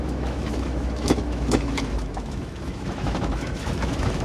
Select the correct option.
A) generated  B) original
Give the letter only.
A